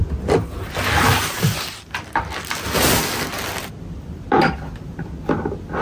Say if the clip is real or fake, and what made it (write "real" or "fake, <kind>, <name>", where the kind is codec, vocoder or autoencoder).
real